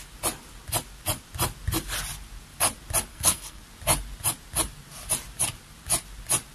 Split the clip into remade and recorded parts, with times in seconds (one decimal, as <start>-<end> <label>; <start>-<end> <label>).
0.0-3.1 recorded; 3.1-3.6 remade; 3.6-6.5 recorded